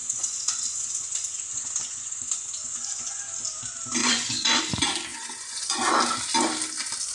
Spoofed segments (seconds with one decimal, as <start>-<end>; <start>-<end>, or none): 0.0-3.2; 4.0-4.6; 5.1-5.8

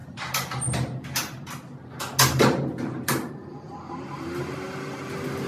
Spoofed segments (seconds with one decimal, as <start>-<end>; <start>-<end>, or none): none

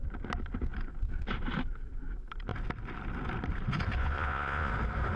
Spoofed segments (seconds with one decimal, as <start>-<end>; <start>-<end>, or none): 4.0-4.7

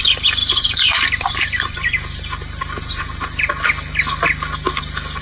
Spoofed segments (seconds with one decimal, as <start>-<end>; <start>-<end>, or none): 0.4-3.5

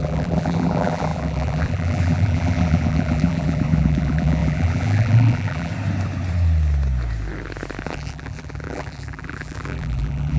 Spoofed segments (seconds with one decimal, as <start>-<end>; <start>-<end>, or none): 0.0-5.7; 7.8-10.4

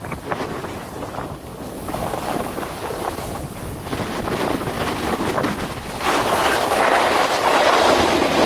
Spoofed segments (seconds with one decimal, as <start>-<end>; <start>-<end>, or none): none

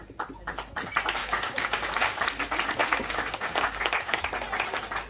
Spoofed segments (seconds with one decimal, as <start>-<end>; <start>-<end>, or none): 1.2-2.2; 2.8-4.2

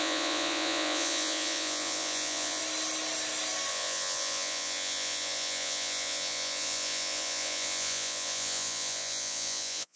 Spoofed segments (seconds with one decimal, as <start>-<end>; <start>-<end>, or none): 0.0-2.6; 3.7-10.0